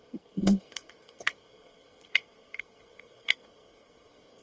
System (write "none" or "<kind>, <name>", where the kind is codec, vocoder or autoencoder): codec, SNAC